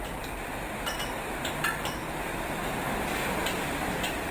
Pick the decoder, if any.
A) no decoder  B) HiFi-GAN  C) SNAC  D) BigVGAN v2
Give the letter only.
A